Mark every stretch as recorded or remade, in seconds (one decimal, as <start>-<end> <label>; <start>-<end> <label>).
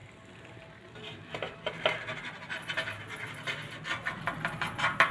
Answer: 0.0-5.1 recorded